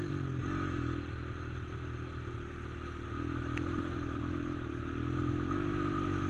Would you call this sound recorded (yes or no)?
yes